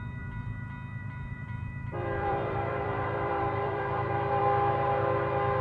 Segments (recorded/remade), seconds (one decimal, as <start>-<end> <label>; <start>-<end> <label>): 0.0-1.0 recorded; 1.0-4.4 remade; 4.4-5.6 recorded